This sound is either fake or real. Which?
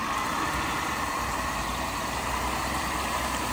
fake